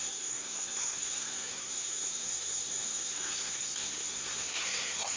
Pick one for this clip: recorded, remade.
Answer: remade